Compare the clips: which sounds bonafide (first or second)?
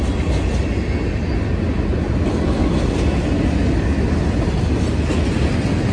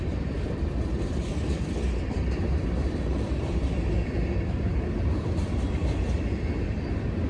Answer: first